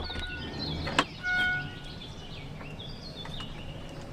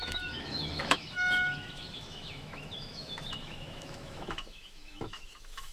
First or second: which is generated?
second